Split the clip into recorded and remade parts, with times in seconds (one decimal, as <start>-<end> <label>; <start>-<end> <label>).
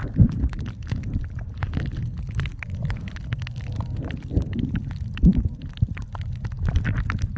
0.0-7.4 recorded